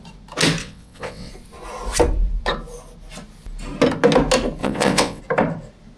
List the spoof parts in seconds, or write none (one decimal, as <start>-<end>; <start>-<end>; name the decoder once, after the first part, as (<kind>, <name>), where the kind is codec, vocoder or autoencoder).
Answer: 0.6-1.3 (vocoder, WaveNeXt); 4.6-5.2